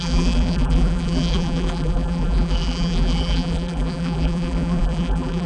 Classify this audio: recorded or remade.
remade